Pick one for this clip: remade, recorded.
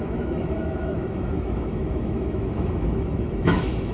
remade